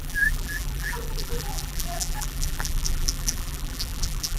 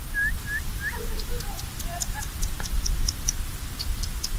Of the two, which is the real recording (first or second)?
second